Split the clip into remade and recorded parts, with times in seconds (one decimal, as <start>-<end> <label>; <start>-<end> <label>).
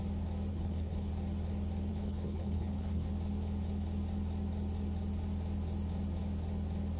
0.0-0.5 recorded; 0.5-1.1 remade; 1.1-1.9 recorded; 1.9-3.1 remade; 3.1-7.0 recorded